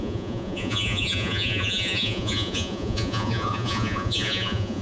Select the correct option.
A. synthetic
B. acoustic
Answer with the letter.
A